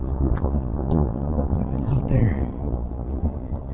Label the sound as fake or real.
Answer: fake